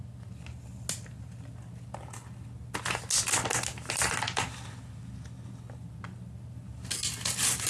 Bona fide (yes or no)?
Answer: yes